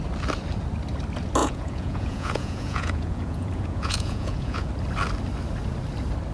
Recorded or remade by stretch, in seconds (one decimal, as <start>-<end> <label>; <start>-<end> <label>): 0.0-1.4 recorded; 1.4-4.7 remade; 4.7-6.3 recorded